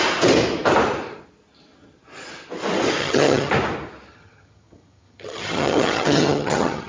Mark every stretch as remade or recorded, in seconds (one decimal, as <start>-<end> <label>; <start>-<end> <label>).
0.0-3.0 recorded; 3.0-3.5 remade; 3.5-4.1 recorded; 4.1-6.9 remade